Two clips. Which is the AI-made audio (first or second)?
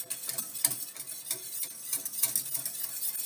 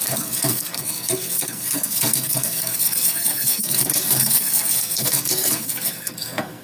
second